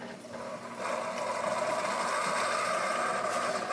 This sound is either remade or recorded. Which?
recorded